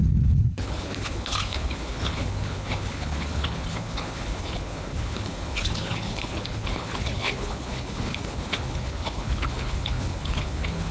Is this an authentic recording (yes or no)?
no